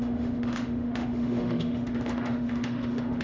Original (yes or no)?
no